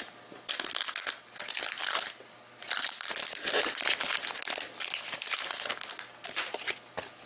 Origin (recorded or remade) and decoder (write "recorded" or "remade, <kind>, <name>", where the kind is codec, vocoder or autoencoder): recorded